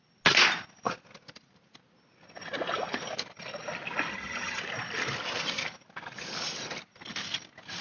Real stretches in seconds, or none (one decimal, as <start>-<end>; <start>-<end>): 0.0-4.1; 4.6-7.8